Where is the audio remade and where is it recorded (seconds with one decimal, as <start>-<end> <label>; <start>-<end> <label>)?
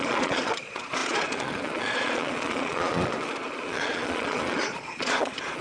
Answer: 0.0-5.6 remade